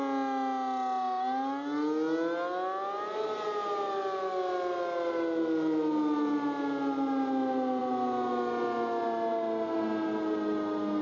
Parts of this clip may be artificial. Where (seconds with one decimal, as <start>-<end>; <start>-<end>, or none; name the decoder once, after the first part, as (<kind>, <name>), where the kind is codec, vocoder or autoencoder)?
none